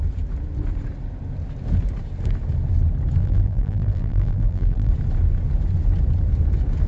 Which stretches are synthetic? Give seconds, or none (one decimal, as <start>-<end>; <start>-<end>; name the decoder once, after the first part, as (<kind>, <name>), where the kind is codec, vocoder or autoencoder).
3.2-4.9 (vocoder, BigVGAN v2)